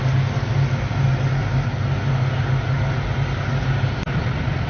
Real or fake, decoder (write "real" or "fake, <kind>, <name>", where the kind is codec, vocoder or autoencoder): real